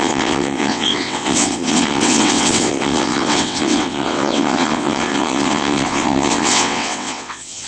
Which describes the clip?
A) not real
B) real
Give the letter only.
A